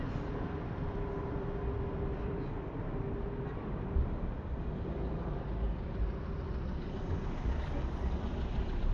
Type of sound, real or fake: fake